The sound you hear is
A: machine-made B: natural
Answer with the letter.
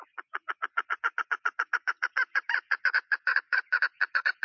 A